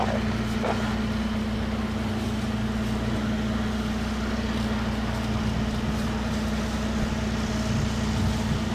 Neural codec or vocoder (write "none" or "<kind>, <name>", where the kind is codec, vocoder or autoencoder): none